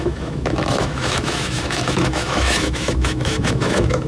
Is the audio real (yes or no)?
no